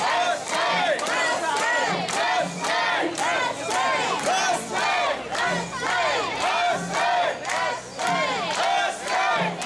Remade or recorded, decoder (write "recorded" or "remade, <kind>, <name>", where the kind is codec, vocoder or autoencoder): recorded